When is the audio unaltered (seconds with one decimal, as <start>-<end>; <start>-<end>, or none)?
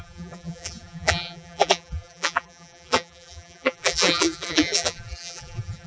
none